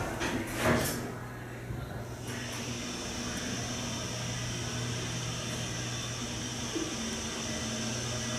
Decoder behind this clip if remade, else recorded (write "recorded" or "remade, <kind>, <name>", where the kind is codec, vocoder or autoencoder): recorded